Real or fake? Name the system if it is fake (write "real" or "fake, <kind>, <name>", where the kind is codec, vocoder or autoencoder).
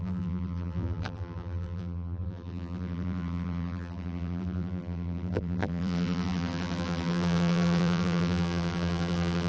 fake, vocoder, BigVGAN v2